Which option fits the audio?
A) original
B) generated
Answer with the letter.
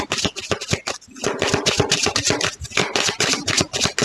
A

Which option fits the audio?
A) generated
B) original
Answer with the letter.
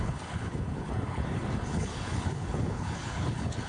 A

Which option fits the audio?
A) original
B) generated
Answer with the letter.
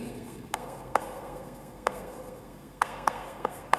B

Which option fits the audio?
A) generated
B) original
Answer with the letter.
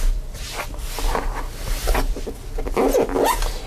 B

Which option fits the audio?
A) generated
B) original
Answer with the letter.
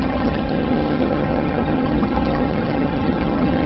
A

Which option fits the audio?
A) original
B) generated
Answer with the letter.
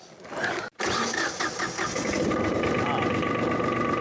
A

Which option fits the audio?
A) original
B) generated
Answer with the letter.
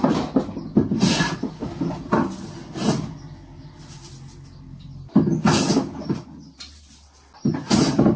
A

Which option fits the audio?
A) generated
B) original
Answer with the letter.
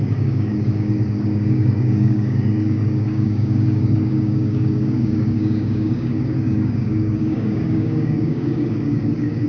A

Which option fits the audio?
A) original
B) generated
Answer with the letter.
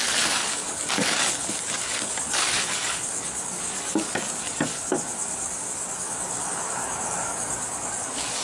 B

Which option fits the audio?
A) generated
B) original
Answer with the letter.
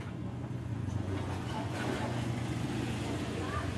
A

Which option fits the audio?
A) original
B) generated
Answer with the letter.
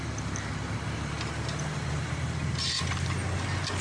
A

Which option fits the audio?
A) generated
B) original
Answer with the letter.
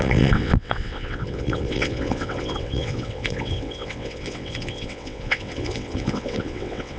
A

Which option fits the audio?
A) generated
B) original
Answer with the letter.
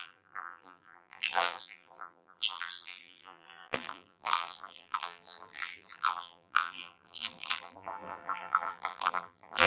A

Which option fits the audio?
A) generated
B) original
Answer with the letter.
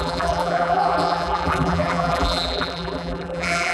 A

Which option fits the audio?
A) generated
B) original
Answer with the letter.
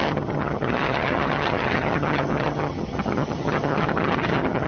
A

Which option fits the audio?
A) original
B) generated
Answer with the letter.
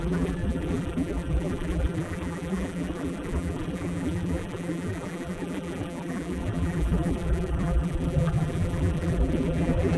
B